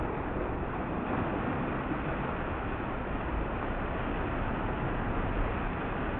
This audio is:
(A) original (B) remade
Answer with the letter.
A